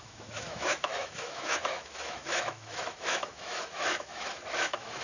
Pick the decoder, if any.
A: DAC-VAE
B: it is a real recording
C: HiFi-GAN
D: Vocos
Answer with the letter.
A